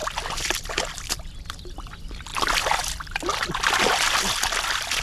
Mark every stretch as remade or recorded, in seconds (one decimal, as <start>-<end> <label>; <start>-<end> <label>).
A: 0.0-3.3 recorded; 3.3-3.8 remade; 3.8-5.0 recorded